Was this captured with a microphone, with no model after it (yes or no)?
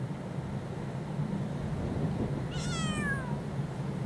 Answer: yes